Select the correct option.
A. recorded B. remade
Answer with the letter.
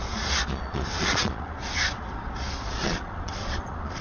B